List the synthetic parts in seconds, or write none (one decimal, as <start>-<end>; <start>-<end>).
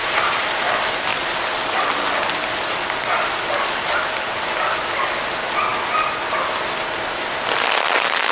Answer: 0.0-0.7